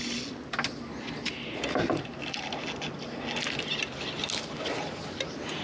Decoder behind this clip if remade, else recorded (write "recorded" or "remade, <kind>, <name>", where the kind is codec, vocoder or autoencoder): recorded